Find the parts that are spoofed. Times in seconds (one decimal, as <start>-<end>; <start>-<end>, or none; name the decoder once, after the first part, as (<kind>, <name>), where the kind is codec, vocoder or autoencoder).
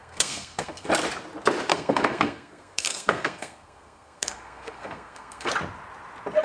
0.0-0.9 (codec, SNAC); 1.7-5.5